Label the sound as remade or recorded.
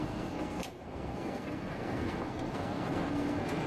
remade